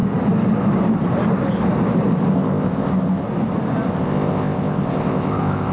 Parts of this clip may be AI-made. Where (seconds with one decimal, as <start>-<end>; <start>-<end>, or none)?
2.3-3.2; 3.9-5.7